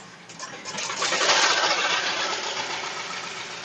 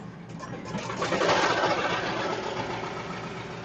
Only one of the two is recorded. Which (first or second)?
second